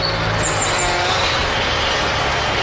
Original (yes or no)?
yes